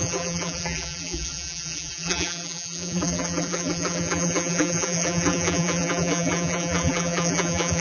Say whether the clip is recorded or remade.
remade